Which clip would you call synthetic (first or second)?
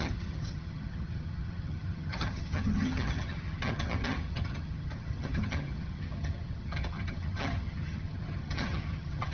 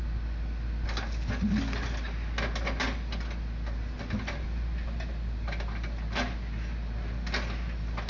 first